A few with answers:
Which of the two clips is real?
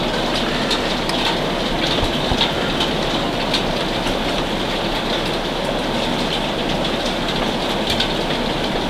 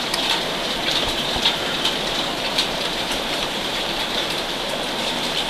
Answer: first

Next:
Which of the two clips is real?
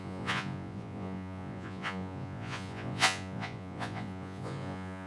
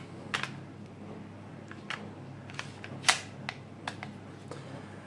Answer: second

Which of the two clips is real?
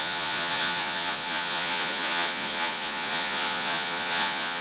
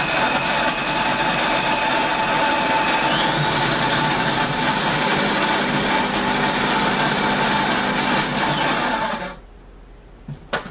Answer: second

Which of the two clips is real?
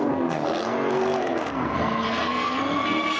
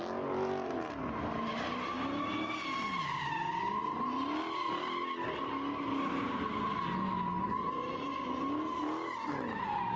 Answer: second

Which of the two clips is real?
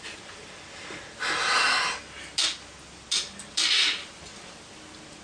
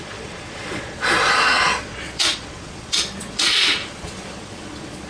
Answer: first